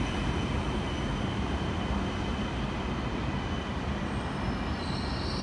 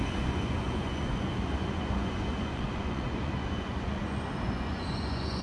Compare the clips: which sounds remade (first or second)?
second